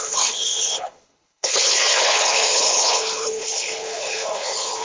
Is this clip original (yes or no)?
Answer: no